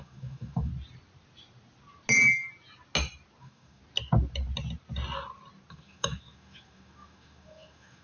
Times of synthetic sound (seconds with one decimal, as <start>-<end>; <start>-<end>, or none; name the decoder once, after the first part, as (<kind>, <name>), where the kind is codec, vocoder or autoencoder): 0.0-0.7 (autoencoder, DAC-VAE); 3.4-3.8; 5.7-8.0